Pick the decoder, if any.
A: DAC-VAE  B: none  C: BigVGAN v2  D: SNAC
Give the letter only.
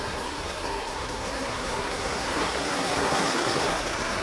D